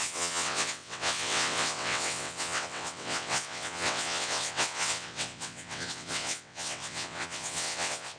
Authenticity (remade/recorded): remade